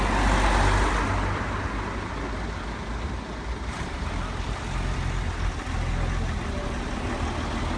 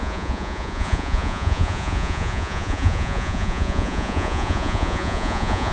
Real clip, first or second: first